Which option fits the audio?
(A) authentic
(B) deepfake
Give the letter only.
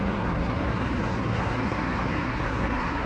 B